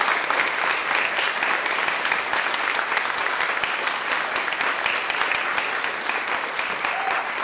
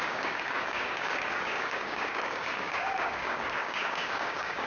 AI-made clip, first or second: second